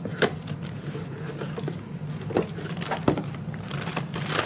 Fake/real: fake